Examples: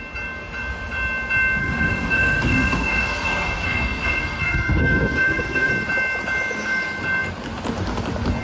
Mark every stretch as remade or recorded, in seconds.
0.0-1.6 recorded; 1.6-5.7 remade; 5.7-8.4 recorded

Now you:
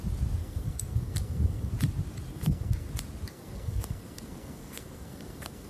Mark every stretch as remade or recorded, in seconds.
0.0-0.4 recorded; 0.4-1.7 remade; 1.7-2.3 recorded; 2.3-2.9 remade; 2.9-3.3 recorded; 3.3-5.7 remade

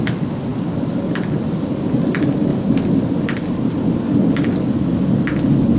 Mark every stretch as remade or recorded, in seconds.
0.0-5.8 recorded

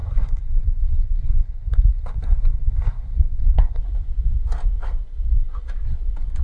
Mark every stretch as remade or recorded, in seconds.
0.0-3.8 remade; 3.8-6.4 recorded

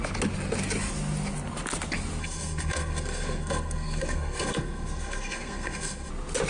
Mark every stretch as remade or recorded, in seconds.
0.0-2.2 recorded; 2.2-6.1 remade; 6.1-6.5 recorded

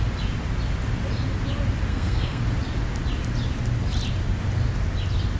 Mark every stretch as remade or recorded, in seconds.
0.0-1.9 recorded; 1.9-2.4 remade; 2.4-5.4 recorded

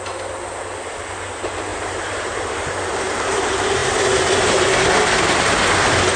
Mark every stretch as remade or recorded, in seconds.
0.0-6.2 recorded

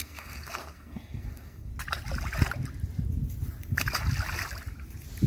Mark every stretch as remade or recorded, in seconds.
0.0-1.7 remade; 1.7-5.3 recorded